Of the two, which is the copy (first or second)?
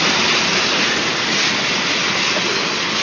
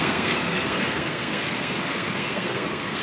second